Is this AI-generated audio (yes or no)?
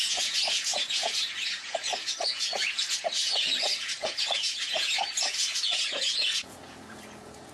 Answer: yes